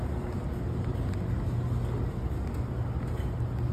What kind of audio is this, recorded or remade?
recorded